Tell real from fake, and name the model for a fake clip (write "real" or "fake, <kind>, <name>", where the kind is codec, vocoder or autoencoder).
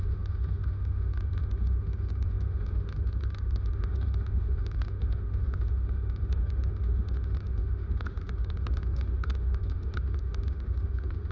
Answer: fake, autoencoder, DAC-VAE